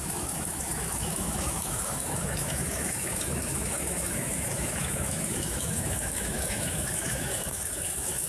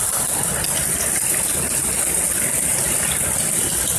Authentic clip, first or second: second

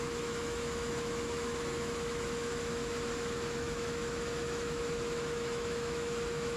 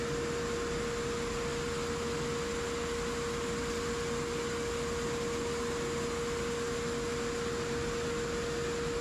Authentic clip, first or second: second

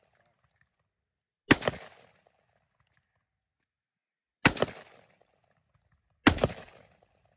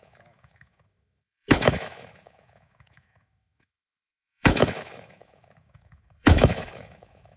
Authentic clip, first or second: first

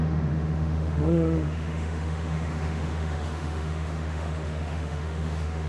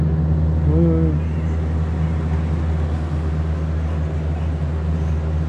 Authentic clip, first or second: second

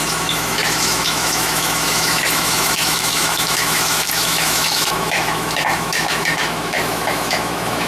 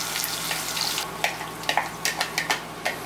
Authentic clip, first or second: second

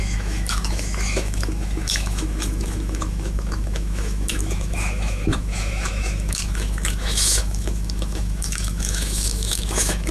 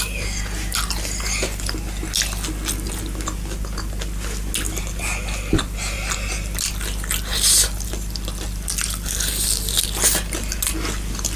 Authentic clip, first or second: second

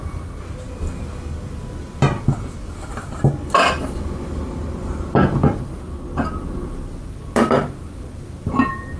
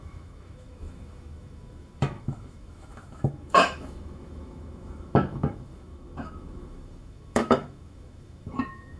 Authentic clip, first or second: first